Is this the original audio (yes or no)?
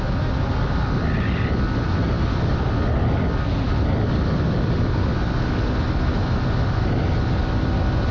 yes